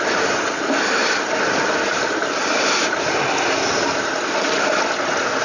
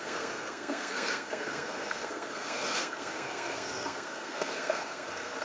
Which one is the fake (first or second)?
second